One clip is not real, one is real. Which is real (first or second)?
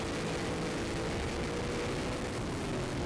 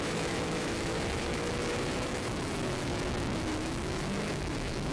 first